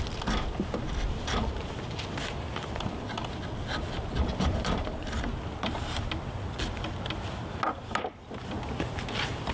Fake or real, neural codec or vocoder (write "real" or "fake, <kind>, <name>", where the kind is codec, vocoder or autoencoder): real